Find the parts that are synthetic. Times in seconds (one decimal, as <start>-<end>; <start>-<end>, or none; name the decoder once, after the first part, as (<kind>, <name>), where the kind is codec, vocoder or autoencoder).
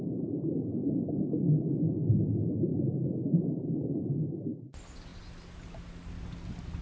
0.8-2.1 (codec, DAC); 2.7-4.0